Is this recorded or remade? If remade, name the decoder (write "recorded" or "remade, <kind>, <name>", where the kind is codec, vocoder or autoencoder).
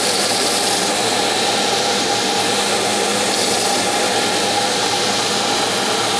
recorded